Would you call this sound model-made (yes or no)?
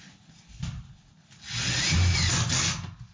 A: no